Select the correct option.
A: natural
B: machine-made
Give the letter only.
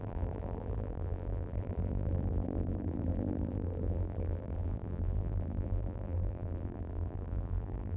B